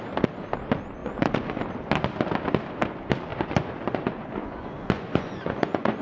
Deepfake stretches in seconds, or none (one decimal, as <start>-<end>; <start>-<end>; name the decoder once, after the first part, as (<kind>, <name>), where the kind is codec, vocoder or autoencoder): 1.0-1.6 (vocoder, Vocos); 3.3-3.9; 4.4-6.0